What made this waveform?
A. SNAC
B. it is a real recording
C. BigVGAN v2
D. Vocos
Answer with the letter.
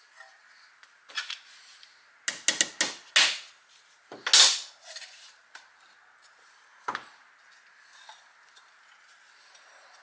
B